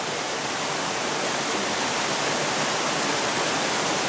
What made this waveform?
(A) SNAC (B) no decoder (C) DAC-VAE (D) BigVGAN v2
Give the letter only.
B